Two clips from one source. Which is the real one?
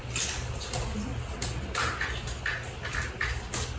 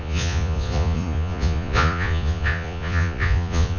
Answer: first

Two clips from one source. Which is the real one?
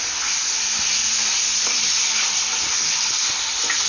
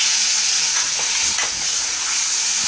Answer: first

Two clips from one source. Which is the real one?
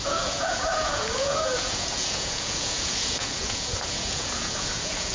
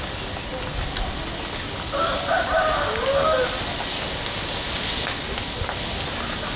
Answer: second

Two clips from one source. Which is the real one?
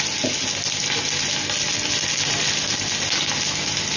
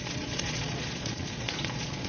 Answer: first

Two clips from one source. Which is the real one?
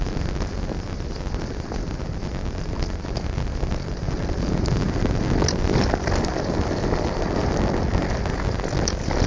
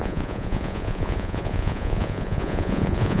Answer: first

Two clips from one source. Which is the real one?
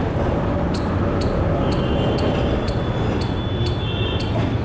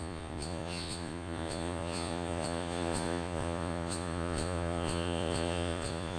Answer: first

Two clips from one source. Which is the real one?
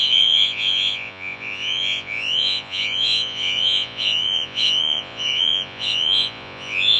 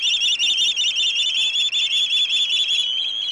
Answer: second